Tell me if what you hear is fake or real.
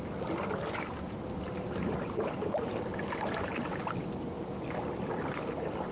real